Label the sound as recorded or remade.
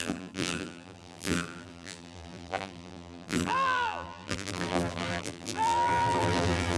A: remade